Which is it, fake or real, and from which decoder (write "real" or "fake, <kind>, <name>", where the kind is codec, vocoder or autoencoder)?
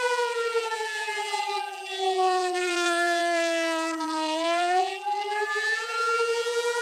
fake, vocoder, BigVGAN v2